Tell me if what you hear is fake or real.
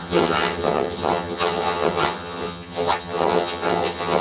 fake